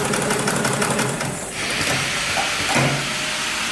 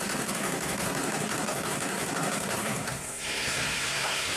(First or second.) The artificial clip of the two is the second